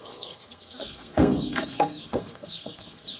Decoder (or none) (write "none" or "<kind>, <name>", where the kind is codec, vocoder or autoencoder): codec, SNAC